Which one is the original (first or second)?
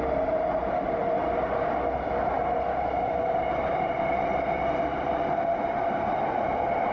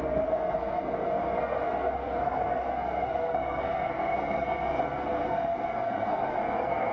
first